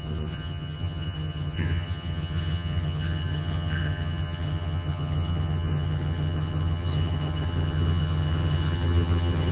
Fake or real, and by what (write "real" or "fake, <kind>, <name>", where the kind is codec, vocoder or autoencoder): fake, vocoder, HiFi-GAN